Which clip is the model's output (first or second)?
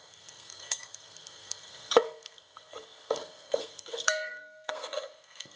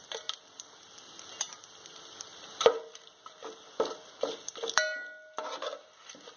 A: first